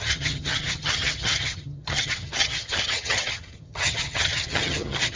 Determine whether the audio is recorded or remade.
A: remade